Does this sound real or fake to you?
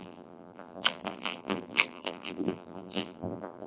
fake